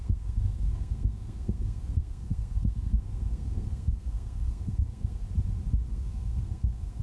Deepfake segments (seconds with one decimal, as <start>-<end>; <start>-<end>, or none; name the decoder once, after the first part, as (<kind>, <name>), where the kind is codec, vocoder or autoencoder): 0.0-5.2 (codec, SNAC); 5.9-7.0